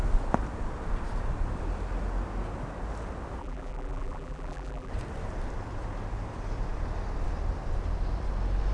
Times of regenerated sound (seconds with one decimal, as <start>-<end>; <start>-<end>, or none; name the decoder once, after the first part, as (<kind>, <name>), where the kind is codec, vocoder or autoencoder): 3.4-4.9 (vocoder, BigVGAN v2)